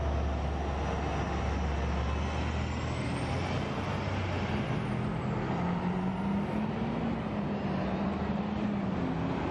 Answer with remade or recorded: recorded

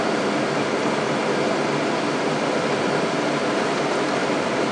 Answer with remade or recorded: recorded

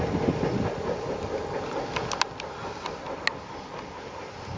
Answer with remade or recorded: recorded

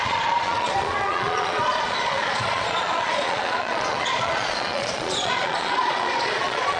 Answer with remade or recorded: remade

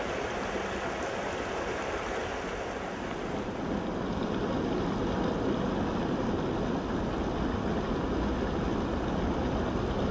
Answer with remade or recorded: recorded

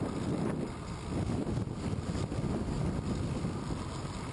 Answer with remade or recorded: recorded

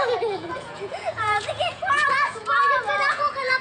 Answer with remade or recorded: remade